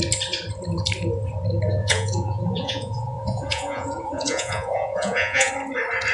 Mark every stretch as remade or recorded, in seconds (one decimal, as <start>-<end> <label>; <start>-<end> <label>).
0.0-1.8 recorded; 1.8-5.5 remade; 5.5-6.1 recorded